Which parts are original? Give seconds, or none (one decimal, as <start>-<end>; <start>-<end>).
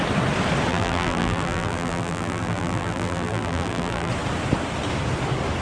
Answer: 0.0-0.7; 4.1-5.6